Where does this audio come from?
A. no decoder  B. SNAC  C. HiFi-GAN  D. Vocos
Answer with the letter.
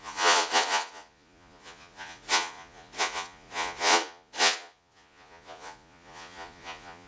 D